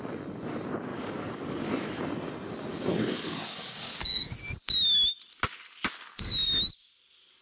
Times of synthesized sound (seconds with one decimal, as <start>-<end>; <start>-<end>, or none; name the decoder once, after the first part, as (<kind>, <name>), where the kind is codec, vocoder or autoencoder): 0.9-2.0 (codec, DAC); 2.7-4.3